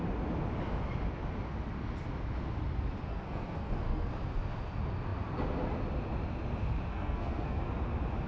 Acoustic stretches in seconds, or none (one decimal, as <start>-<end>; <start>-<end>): 0.0-3.1; 4.1-6.9; 7.7-8.3